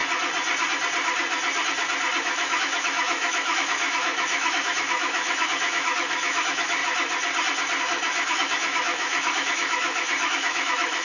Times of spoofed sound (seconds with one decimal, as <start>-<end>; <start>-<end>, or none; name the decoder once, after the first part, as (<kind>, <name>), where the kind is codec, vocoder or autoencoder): 2.2-6.8 (autoencoder, DAC-VAE); 7.8-11.0